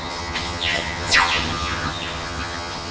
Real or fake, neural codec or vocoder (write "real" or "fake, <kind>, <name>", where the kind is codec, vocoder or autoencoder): fake, vocoder, HiFi-GAN